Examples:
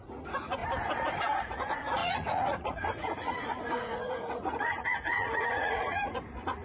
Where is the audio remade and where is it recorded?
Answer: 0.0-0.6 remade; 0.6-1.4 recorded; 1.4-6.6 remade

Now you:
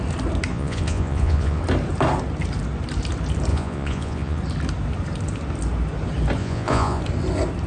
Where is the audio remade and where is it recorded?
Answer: 0.0-0.5 recorded; 0.5-1.6 remade; 1.6-3.5 recorded; 3.5-4.4 remade; 4.4-6.4 recorded; 6.4-7.0 remade; 7.0-7.7 recorded

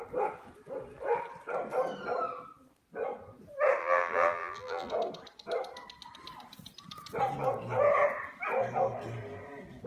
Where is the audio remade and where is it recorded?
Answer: 0.0-3.8 recorded; 3.8-4.9 remade; 4.9-9.9 recorded

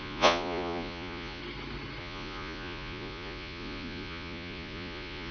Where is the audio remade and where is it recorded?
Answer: 0.0-1.4 remade; 1.4-2.0 recorded; 2.0-5.3 remade

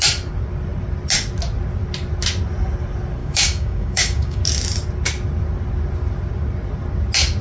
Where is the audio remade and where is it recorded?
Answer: 0.0-3.2 recorded; 3.2-4.4 remade; 4.4-7.4 recorded

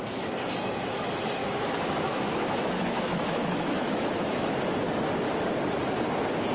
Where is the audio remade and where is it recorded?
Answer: 0.0-1.4 recorded; 1.4-4.6 remade; 4.6-6.5 recorded

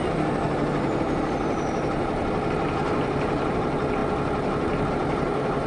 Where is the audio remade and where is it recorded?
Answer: 0.0-2.2 remade; 2.2-3.5 recorded; 3.5-4.0 remade; 4.0-4.9 recorded; 4.9-5.7 remade

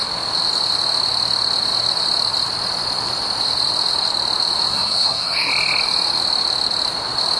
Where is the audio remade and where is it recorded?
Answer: 0.0-4.7 recorded; 4.7-5.5 remade; 5.5-7.4 recorded